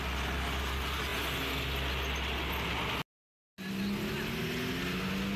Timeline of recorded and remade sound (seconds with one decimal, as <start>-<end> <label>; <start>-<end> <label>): 0.0-5.4 recorded